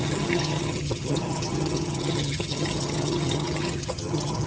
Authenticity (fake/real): fake